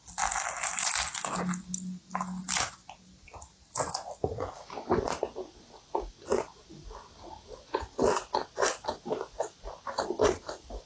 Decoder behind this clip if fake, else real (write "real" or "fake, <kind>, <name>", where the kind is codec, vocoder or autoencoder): real